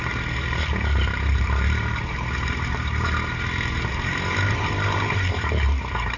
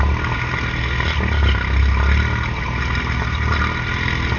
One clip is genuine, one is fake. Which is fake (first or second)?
first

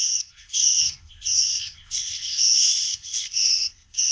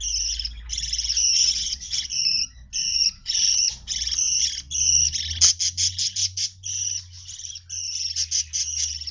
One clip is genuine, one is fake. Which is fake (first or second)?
first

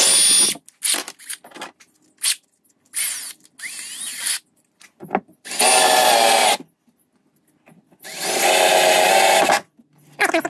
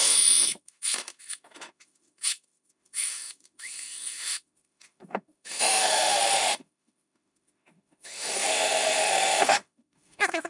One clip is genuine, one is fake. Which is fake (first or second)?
second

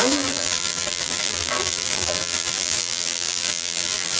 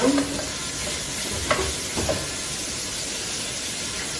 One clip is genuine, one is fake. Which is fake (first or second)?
first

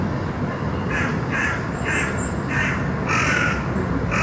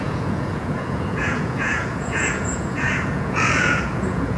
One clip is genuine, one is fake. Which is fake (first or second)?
second